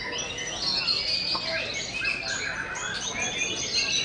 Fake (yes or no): no